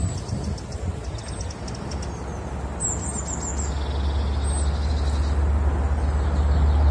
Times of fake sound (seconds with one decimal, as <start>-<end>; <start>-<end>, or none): none